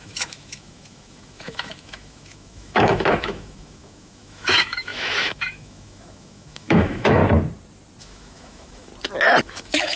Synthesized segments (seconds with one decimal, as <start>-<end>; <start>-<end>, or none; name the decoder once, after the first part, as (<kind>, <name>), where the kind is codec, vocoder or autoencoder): 0.0-7.2 (autoencoder, DAC-VAE); 8.0-8.9; 9.4-10.0